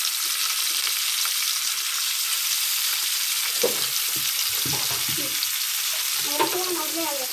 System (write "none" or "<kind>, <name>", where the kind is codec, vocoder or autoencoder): none